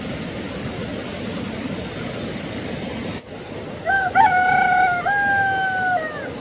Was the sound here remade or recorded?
recorded